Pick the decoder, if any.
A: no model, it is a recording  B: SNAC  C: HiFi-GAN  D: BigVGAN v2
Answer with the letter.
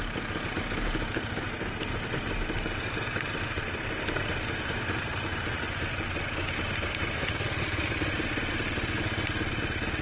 A